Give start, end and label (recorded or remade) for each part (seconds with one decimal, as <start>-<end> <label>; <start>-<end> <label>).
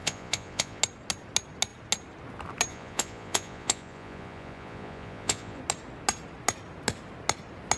0.0-0.8 remade; 0.8-2.7 recorded; 2.7-5.6 remade; 5.6-7.8 recorded